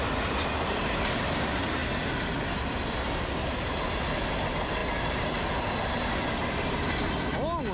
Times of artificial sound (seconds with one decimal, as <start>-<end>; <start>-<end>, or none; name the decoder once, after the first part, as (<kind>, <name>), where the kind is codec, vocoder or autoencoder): none